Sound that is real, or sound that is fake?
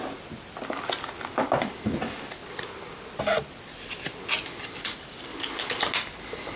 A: real